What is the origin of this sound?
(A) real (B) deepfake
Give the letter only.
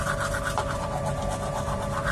A